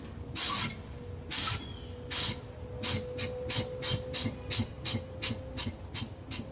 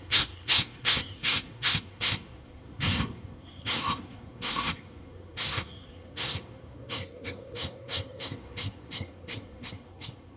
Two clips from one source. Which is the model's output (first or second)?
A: second